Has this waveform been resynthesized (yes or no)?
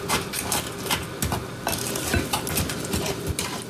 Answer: no